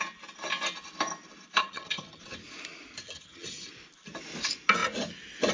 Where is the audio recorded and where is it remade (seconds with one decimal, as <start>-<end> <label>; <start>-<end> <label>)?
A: 0.0-1.6 recorded; 1.6-2.2 remade; 2.2-3.0 recorded; 3.0-3.7 remade; 3.7-5.5 recorded